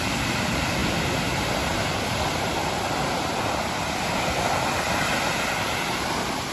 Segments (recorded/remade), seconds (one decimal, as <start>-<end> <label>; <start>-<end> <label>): 0.0-6.5 recorded